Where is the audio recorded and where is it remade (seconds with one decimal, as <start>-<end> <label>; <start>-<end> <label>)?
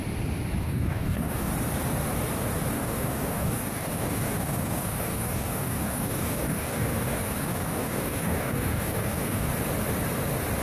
0.0-0.6 recorded; 0.6-1.5 remade; 1.5-2.7 recorded; 2.7-9.5 remade; 9.5-10.6 recorded